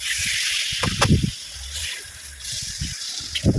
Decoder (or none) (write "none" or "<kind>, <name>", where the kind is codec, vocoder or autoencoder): none